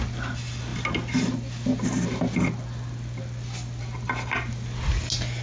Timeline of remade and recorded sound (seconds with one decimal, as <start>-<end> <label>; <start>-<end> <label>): 0.0-5.4 recorded

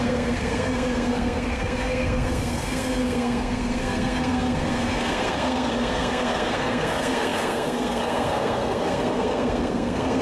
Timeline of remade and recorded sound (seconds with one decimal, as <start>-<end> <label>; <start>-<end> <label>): 0.0-10.2 remade

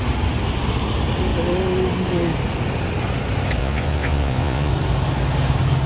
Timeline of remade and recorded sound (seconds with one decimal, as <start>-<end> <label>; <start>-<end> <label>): 0.0-3.6 recorded; 3.6-4.7 remade; 4.7-5.9 recorded

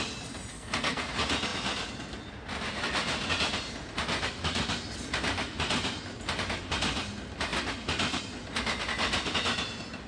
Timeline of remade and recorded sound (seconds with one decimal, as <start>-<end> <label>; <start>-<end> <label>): 0.0-0.5 recorded; 0.5-1.1 remade; 1.1-10.1 recorded

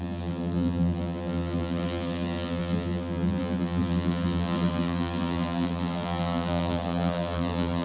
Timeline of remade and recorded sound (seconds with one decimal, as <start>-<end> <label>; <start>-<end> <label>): 0.0-7.8 remade

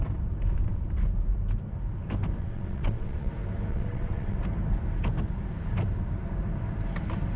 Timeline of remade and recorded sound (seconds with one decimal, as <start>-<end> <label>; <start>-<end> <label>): 0.0-2.4 recorded; 2.4-3.3 remade; 3.3-3.7 recorded; 3.7-4.4 remade; 4.4-7.4 recorded